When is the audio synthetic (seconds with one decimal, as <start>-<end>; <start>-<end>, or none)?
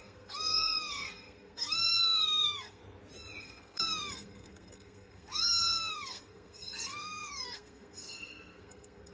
0.0-2.8; 3.4-9.1